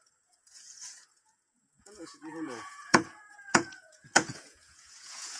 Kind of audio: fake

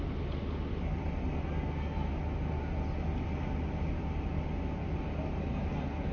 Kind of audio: real